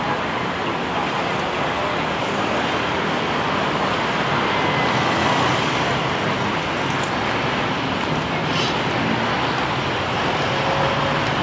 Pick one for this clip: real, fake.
real